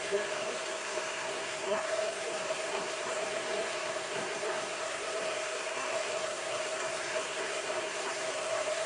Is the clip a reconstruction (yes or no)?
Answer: yes